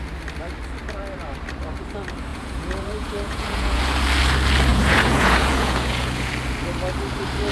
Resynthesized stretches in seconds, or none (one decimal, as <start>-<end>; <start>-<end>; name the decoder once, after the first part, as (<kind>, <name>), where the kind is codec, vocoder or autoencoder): 2.3-3.8 (vocoder, Vocos); 4.7-6.3